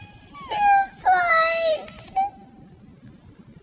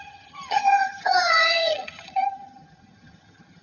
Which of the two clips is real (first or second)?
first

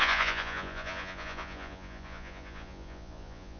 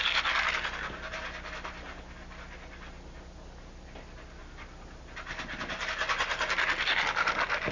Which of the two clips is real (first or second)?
second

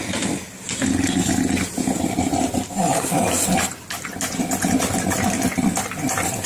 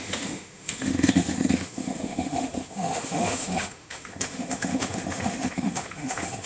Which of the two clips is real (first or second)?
first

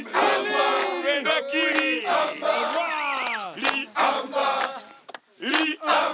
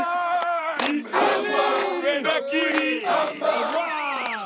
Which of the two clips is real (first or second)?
first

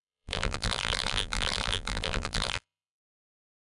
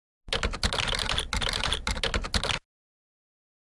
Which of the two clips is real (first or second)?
second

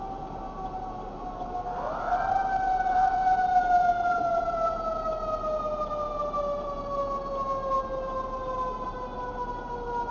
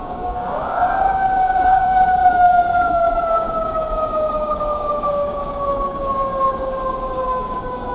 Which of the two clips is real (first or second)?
first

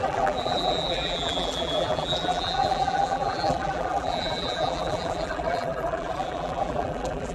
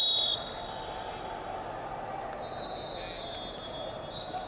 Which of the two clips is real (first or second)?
second